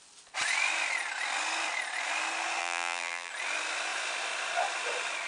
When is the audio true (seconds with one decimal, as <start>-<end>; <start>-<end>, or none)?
0.0-2.6; 3.3-5.3